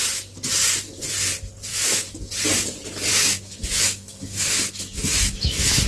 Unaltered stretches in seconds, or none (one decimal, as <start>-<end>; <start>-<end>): 0.0-1.7; 2.3-3.1